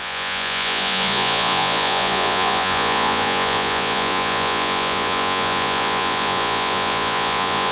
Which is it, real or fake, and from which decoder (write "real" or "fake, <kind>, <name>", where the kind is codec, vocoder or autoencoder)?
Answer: fake, vocoder, Vocos